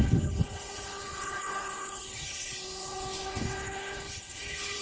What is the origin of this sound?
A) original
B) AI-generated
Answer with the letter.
B